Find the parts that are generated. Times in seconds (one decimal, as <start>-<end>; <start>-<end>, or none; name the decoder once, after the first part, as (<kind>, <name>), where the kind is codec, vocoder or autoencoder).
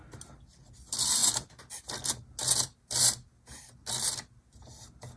none